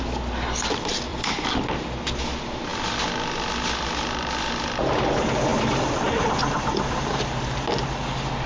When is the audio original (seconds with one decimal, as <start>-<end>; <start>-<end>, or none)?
0.0-1.1; 1.6-5.5; 7.2-8.5